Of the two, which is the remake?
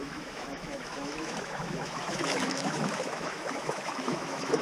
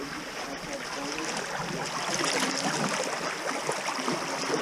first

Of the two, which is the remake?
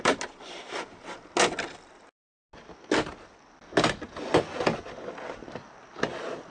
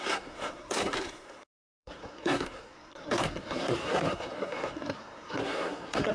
second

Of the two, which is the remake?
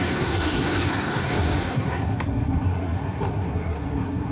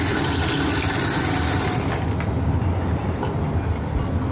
first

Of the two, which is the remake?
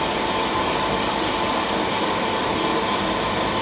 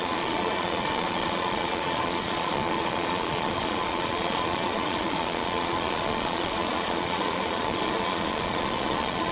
second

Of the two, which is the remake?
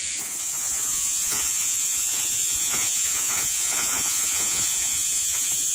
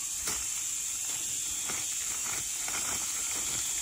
first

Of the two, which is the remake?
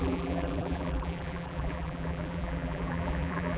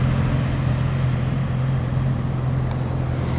first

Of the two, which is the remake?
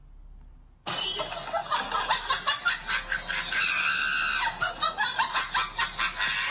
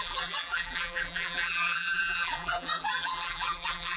second